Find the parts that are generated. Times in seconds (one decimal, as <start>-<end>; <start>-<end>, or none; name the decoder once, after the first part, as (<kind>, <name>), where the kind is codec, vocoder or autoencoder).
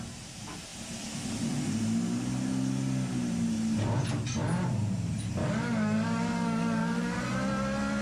5.4-7.2 (codec, DAC)